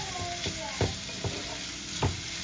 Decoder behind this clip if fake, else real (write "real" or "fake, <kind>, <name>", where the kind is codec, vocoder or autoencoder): real